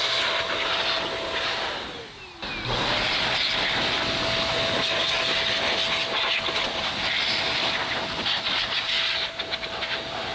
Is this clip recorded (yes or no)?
yes